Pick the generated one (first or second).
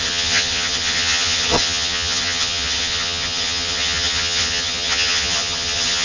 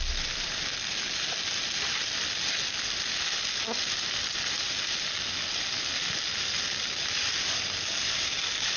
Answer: first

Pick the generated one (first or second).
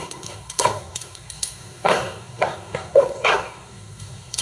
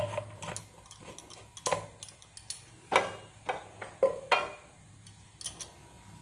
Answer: first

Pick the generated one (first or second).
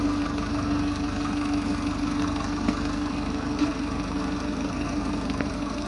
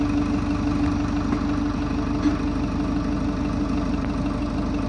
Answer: first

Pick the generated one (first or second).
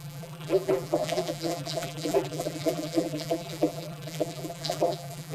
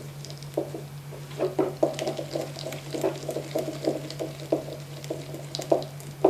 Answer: first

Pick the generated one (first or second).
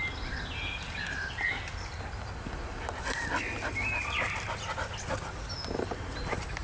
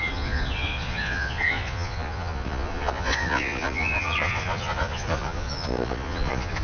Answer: second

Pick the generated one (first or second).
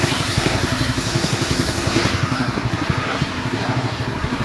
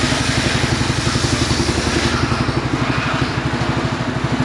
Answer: first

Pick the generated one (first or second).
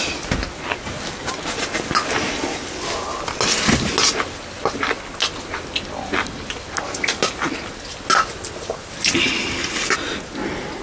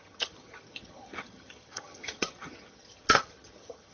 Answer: second